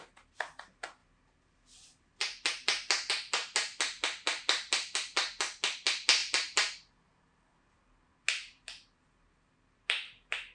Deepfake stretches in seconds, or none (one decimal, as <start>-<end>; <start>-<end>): none